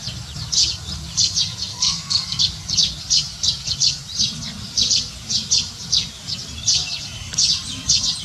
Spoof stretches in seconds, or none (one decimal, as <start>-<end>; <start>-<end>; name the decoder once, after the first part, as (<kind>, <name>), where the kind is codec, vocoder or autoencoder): 1.7-2.4 (codec, SNAC)